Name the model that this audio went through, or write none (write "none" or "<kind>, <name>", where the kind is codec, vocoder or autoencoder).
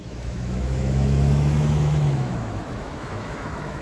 autoencoder, DAC-VAE